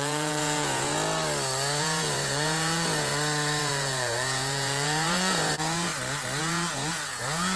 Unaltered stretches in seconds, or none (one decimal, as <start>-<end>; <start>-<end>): 0.9-1.8; 3.1-3.6; 5.9-6.4